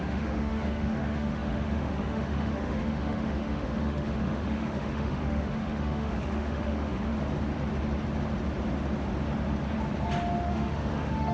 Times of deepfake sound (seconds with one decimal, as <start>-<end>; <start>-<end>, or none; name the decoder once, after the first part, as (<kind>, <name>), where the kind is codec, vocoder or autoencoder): 0.0-7.1 (autoencoder, DAC-VAE); 10.5-11.3